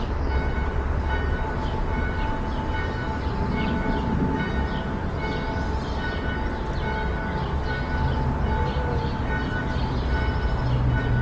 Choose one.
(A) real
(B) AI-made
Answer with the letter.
A